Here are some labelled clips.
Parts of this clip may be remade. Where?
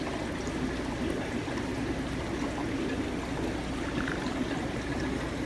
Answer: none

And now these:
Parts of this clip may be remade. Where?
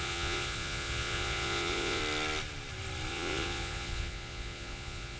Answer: 0.0-2.0 (vocoder, Vocos); 3.1-5.2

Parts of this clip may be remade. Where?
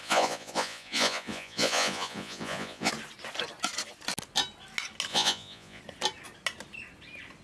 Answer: 0.0-2.9 (vocoder, Vocos); 5.1-5.8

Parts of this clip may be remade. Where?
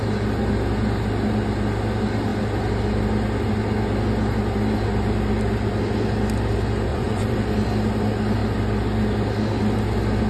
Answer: 6.9-7.4 (vocoder, Vocos)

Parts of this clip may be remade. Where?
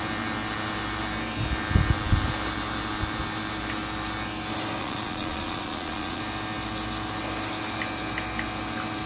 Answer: 4.8-6.2 (vocoder, Vocos)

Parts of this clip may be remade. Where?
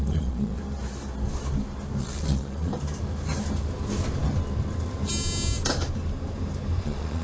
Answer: 0.0-0.6 (vocoder, Vocos); 2.0-2.7; 6.8-7.2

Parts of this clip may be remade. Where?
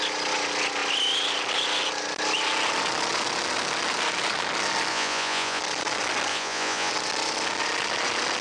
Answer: 4.9-5.6 (vocoder, Vocos); 6.3-6.9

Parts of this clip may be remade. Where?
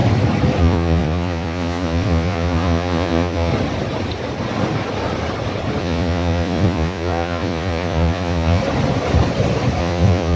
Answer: 0.6-3.5 (vocoder, Vocos); 5.8-8.6; 9.8-10.4